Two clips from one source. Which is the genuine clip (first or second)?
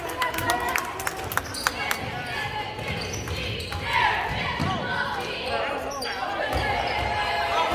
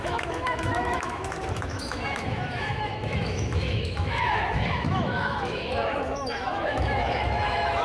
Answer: first